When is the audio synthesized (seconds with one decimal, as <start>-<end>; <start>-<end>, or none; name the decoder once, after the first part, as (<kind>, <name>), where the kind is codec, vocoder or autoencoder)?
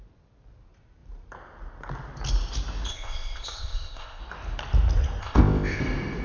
2.9-4.2 (codec, ZipCodec); 5.2-5.8